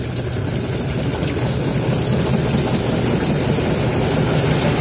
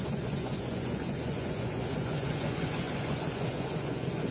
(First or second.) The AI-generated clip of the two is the second